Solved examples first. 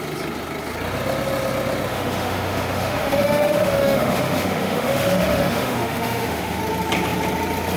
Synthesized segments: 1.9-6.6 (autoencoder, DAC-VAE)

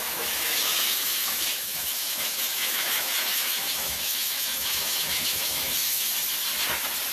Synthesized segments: 0.0-6.1 (autoencoder, DAC-VAE)

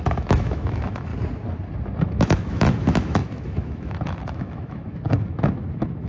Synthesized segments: 0.0-1.1 (autoencoder, DAC-VAE); 2.0-6.1

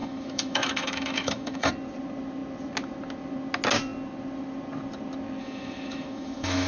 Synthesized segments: 0.0-1.7 (autoencoder, DAC-VAE); 5.4-6.7

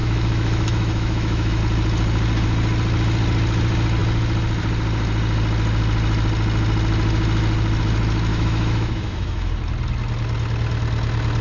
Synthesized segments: 0.0-1.6 (autoencoder, DAC-VAE); 8.3-9.5

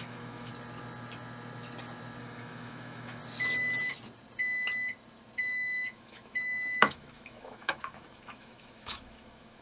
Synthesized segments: 0.0-0.5 (autoencoder, DAC-VAE); 2.2-3.2; 5.4-9.6

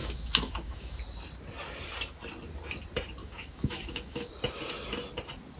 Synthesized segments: 0.0-1.0 (autoencoder, DAC-VAE); 3.2-4.3

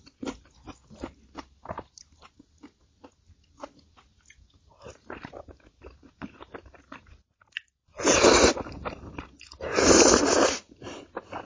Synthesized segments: none